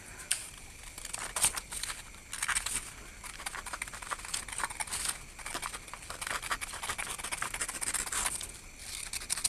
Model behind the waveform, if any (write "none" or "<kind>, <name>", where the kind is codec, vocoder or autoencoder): none